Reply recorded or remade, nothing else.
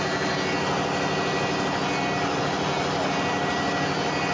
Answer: recorded